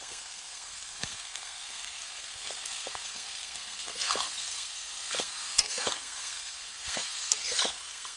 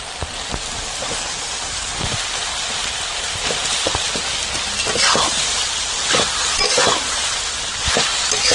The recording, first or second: second